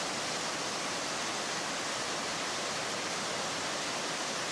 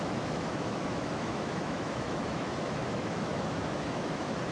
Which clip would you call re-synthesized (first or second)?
second